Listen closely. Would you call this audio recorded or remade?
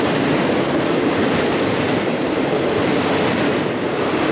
recorded